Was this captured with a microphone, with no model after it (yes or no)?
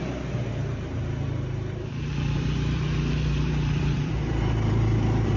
no